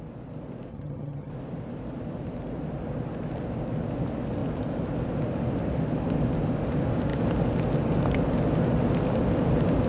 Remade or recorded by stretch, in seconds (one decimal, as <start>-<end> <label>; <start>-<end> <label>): 0.0-0.7 recorded; 0.7-1.3 remade; 1.3-9.9 recorded